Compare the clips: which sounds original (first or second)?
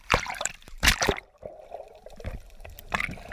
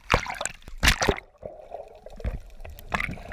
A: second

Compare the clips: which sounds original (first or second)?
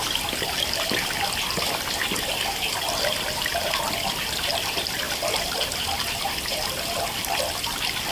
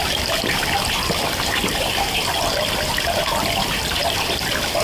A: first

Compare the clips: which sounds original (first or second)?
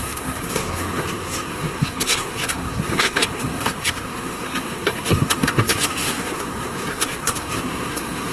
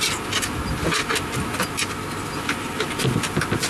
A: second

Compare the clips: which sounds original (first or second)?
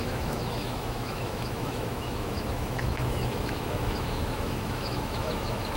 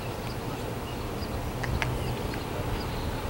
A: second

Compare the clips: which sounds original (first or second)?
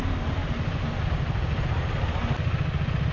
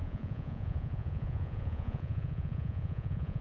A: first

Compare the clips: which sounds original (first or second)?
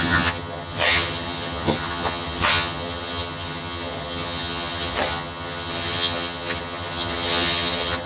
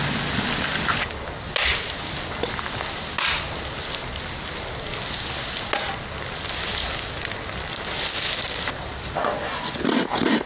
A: second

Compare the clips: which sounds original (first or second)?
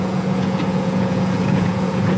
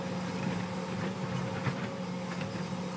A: second